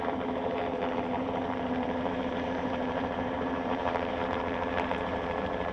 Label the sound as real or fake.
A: fake